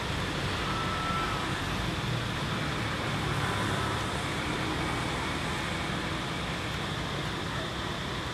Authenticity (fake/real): real